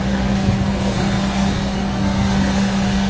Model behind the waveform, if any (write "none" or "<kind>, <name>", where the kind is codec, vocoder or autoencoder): codec, SNAC